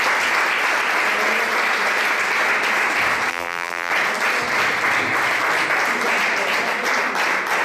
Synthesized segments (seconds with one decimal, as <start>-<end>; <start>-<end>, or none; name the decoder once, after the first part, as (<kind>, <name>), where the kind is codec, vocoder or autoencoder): 3.3-3.9 (vocoder, BigVGAN v2)